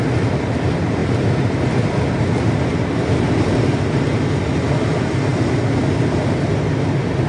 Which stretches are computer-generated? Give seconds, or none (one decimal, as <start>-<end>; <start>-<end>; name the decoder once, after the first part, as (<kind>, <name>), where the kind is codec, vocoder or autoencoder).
none